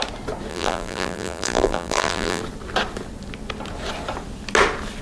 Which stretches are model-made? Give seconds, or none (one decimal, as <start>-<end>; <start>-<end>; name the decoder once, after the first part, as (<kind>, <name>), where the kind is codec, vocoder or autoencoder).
0.5-2.4 (vocoder, BigVGAN v2)